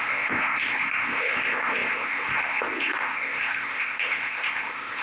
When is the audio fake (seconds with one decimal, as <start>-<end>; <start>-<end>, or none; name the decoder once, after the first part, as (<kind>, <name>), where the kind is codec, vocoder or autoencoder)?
0.0-5.0 (codec, ZipCodec)

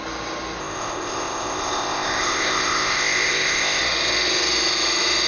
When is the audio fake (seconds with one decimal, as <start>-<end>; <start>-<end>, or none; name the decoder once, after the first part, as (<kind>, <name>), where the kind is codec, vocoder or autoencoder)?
0.6-3.8 (codec, ZipCodec)

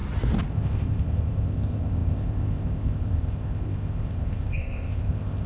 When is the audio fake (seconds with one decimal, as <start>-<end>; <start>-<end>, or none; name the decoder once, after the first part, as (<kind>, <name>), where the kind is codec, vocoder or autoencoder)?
0.5-5.5 (codec, ZipCodec)

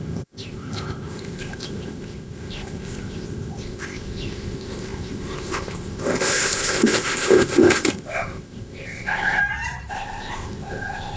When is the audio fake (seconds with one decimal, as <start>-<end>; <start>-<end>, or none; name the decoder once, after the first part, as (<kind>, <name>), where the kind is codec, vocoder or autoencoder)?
0.0-9.4 (codec, ZipCodec); 9.9-11.2

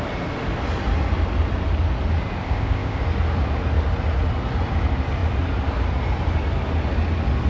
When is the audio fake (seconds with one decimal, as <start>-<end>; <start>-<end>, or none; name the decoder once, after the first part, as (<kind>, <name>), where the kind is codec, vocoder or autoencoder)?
2.4-3.0 (codec, ZipCodec)

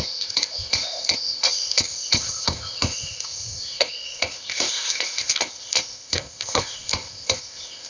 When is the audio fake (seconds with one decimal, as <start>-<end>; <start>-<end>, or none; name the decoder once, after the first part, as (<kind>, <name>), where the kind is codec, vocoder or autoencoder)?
0.0-7.9 (codec, ZipCodec)

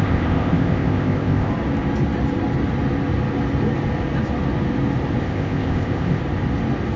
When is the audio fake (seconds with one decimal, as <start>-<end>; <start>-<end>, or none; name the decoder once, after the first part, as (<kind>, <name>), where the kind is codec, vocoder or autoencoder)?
0.0-1.5 (codec, ZipCodec); 5.2-6.2

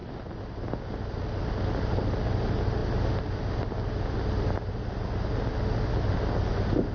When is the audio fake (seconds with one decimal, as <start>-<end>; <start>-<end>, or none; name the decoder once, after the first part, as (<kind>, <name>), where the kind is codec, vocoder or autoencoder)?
none